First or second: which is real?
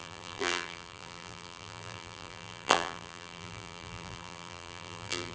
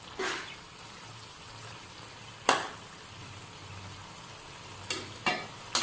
second